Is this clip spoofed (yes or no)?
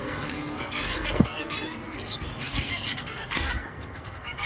yes